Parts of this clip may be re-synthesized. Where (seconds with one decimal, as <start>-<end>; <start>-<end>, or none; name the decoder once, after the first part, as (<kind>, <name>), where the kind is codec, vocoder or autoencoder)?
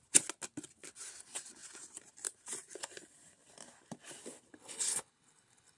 4.5-5.8 (codec, HILCodec)